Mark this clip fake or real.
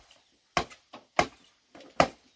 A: real